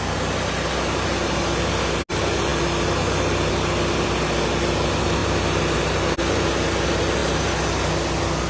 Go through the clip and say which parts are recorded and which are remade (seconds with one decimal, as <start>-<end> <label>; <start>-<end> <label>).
0.0-8.5 recorded